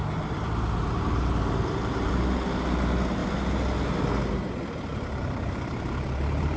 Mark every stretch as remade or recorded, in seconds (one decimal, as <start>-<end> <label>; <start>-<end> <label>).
0.0-2.1 remade; 2.1-4.9 recorded; 4.9-6.6 remade